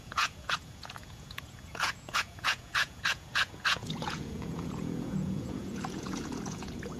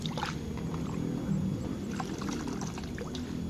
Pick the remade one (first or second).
first